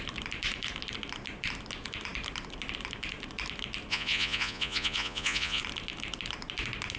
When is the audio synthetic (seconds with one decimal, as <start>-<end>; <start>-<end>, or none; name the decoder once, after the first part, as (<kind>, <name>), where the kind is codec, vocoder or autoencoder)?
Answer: 3.9-5.6 (vocoder, Vocos)